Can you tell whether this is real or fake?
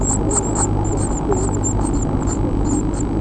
real